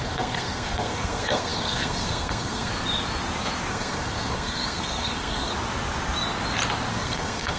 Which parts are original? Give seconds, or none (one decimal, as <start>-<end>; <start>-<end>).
2.7-3.7; 5.5-6.9